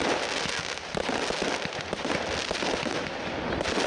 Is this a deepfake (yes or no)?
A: no